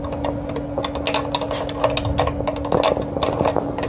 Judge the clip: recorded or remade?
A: recorded